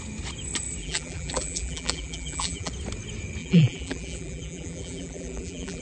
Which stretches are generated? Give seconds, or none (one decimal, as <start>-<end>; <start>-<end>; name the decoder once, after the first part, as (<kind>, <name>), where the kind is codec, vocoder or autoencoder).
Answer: 0.8-2.7 (vocoder, BigVGAN v2); 3.4-5.8